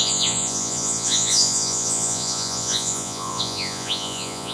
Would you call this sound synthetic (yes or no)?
yes